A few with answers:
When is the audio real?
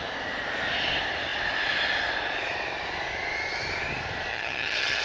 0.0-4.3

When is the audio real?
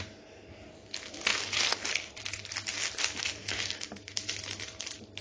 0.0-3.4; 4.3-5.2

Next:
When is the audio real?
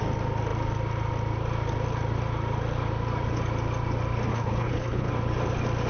0.0-4.3; 5.1-5.9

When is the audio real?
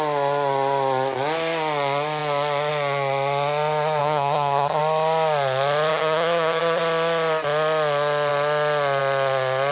0.0-4.0; 4.8-5.9; 6.8-9.7